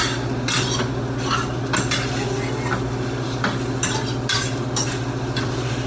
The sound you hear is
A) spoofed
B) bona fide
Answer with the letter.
B